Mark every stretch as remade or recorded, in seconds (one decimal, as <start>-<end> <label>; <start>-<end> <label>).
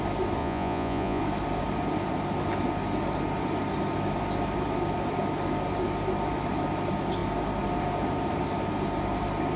0.0-0.4 recorded; 0.4-1.2 remade; 1.2-9.6 recorded